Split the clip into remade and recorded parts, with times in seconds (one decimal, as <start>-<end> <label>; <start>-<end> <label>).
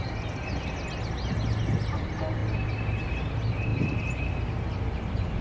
0.0-2.4 remade; 2.4-3.1 recorded; 3.1-5.4 remade